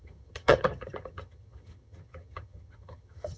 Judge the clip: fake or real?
fake